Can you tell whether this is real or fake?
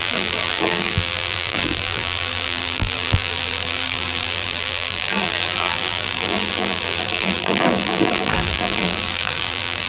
fake